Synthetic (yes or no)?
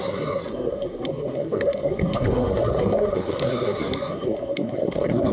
yes